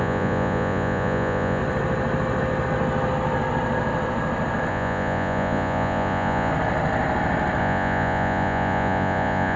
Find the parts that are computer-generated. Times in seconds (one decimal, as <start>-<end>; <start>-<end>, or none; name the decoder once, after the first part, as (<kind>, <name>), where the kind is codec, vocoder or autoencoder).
0.0-1.6 (vocoder, Vocos); 4.7-6.5; 7.6-9.6